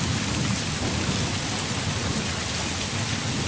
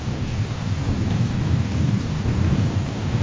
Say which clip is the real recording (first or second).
first